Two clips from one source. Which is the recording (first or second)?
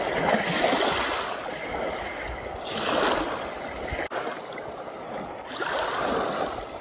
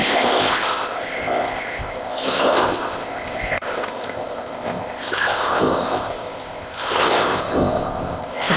first